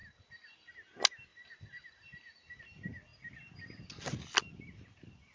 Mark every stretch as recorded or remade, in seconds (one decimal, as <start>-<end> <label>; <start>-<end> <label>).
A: 0.0-0.7 remade; 0.7-1.3 recorded; 1.3-2.6 remade; 2.6-5.3 recorded